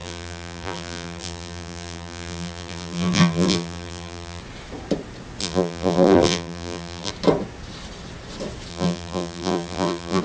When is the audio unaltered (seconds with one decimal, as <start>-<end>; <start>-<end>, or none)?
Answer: 4.4-5.4; 7.1-8.7